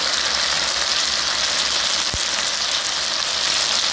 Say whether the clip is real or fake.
real